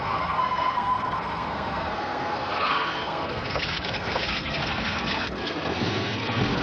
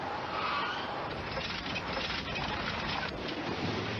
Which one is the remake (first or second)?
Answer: first